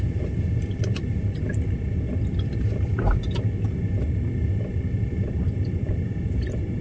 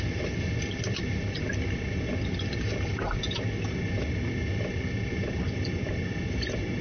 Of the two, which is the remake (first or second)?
first